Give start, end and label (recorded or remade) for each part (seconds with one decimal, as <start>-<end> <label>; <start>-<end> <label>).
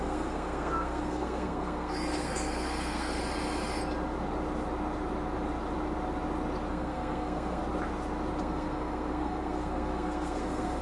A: 0.0-3.2 remade; 3.2-6.7 recorded; 6.7-7.6 remade; 7.6-8.4 recorded; 8.4-10.8 remade